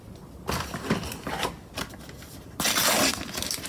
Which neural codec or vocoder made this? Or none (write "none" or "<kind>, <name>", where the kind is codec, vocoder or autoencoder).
none